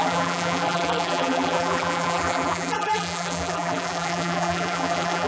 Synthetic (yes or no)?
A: yes